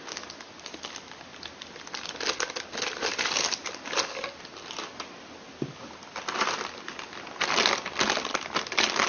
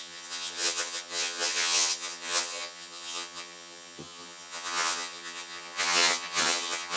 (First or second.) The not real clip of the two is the second